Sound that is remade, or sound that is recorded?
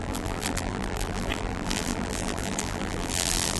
remade